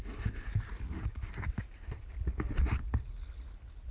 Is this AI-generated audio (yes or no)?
no